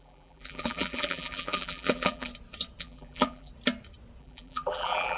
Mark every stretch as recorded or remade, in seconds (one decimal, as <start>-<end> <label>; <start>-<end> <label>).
0.0-2.3 remade; 2.3-2.8 recorded; 2.8-3.5 remade; 3.5-4.2 recorded; 4.2-5.2 remade